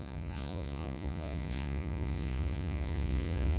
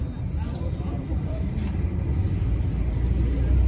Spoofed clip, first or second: first